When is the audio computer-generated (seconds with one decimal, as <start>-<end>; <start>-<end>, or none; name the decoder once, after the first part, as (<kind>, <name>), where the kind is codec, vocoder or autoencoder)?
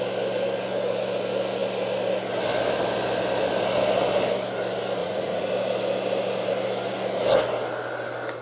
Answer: 5.0-5.5 (vocoder, Vocos)